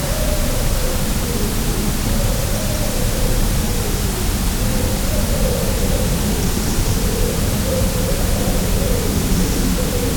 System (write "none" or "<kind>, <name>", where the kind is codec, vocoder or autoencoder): vocoder, BigVGAN v2